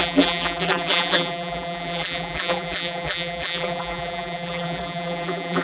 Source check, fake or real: fake